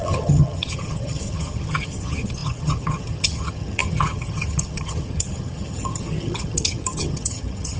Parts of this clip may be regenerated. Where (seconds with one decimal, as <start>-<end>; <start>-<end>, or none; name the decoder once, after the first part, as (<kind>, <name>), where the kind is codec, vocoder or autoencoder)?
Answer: 0.0-7.8 (vocoder, HiFi-GAN)